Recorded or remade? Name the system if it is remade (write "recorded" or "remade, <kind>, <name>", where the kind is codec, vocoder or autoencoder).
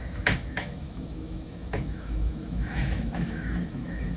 remade, autoencoder, DAC-VAE